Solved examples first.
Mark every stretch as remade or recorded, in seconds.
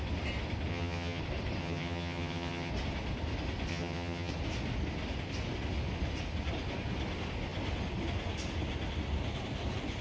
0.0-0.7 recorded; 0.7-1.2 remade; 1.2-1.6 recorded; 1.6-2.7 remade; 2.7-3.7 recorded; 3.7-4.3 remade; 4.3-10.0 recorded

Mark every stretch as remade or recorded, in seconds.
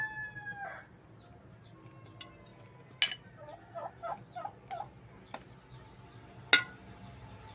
0.0-7.5 recorded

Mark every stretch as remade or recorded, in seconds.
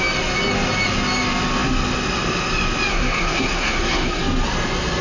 0.0-2.9 recorded; 2.9-4.2 remade; 4.2-5.0 recorded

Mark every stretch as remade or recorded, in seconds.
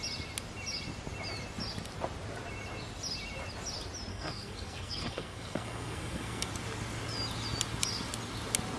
0.0-4.1 recorded; 4.1-6.5 remade; 6.5-8.8 recorded